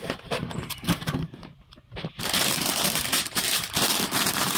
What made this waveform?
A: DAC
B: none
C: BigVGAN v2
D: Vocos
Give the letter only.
C